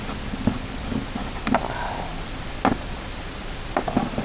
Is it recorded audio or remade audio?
recorded